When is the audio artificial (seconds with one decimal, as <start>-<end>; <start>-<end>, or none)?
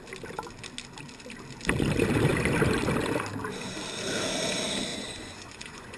4.9-6.0